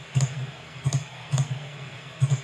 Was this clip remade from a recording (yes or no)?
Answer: yes